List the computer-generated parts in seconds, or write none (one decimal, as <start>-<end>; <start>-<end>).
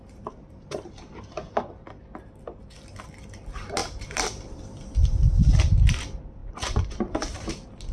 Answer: 0.0-0.9; 3.8-4.4; 6.4-7.5